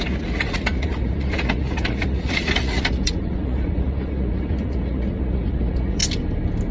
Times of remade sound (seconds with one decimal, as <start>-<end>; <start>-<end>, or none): 0.0-6.0